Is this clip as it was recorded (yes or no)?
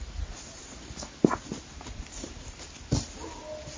yes